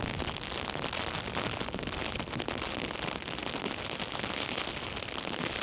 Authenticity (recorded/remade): recorded